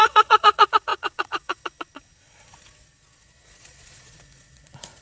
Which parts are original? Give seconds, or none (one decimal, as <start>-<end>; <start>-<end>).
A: none